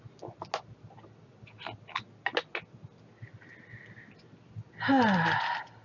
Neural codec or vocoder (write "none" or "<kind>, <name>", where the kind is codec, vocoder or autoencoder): none